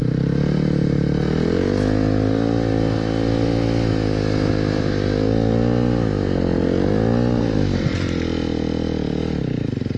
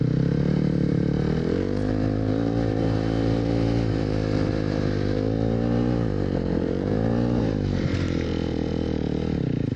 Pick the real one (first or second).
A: first